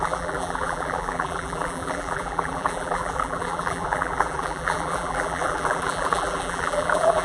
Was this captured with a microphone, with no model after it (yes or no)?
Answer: no